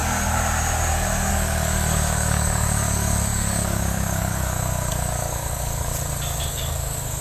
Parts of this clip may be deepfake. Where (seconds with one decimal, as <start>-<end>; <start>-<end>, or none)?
1.3-5.9; 6.5-7.2